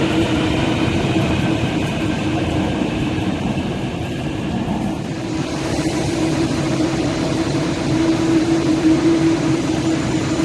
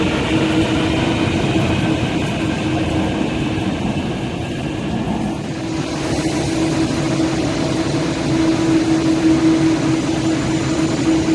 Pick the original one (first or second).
second